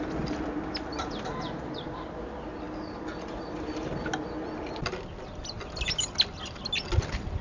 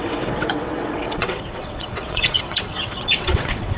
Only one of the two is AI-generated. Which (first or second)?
second